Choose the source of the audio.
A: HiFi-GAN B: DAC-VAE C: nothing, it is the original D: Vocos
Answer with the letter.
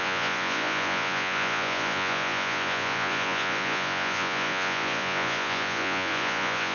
D